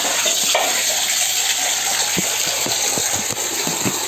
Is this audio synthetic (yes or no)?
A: no